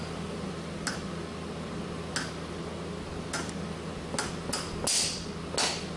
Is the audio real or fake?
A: real